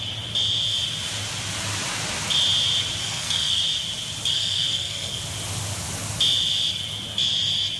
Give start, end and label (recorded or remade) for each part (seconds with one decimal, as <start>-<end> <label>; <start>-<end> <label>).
0.0-3.0 recorded; 3.0-3.6 remade; 3.6-4.3 recorded; 4.3-5.2 remade; 5.2-7.8 recorded